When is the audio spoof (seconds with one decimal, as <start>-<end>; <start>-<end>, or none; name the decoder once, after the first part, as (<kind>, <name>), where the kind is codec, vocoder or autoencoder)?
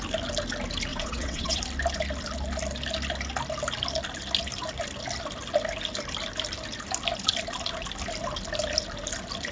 0.9-1.6 (vocoder, WaveNeXt)